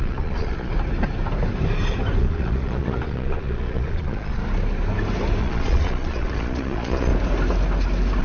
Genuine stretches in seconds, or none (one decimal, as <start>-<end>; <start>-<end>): 0.7-2.2; 4.4-5.4; 7.1-8.2